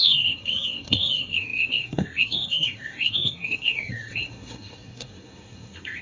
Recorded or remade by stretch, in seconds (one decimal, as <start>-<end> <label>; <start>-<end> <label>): 0.0-6.0 remade